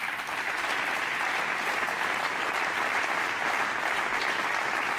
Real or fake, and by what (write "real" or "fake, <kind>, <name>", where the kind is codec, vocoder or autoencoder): real